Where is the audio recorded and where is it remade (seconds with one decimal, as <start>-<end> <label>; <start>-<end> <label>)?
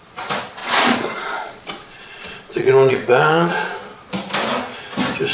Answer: 0.0-0.6 recorded; 0.6-3.8 remade; 3.8-5.3 recorded